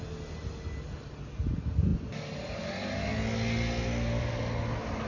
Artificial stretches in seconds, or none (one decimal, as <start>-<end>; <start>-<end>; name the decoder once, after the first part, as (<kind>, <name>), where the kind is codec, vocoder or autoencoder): none